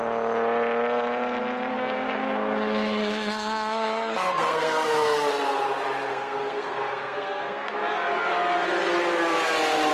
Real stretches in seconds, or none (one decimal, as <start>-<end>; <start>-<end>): 0.0-1.7; 5.3-6.1; 7.7-9.9